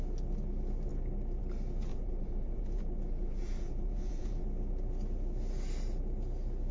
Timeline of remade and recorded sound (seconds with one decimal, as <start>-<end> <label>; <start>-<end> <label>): 0.0-1.9 recorded; 1.9-4.4 remade; 4.4-6.7 recorded